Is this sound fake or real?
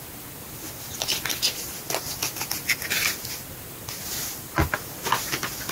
real